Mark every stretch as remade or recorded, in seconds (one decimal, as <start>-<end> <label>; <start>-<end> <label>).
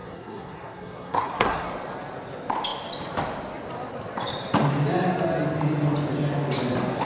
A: 0.0-1.7 remade; 1.7-7.0 recorded